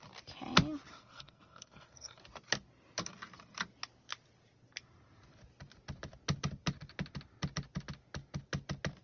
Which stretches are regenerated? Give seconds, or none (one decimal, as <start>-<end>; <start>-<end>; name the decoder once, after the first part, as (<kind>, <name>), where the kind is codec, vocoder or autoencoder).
0.9-2.2 (codec, SNAC)